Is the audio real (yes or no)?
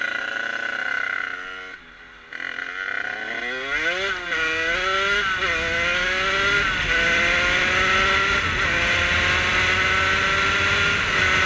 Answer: yes